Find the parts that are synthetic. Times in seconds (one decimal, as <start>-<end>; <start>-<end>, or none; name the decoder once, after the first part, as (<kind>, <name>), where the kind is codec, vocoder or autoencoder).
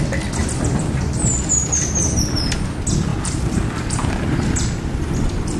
0.4-2.2 (vocoder, BigVGAN v2); 3.1-5.6